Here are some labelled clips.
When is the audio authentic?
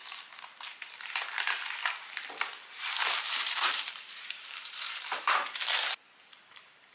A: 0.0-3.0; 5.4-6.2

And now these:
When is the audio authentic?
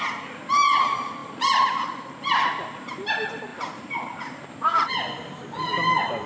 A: 0.0-6.3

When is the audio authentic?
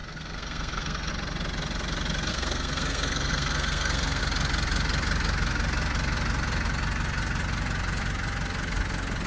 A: 1.1-2.3; 4.2-9.3